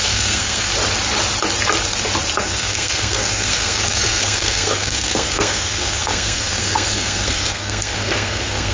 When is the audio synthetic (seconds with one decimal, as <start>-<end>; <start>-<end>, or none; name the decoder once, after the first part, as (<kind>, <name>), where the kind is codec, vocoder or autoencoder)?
0.0-0.7 (codec, SNAC); 2.4-8.7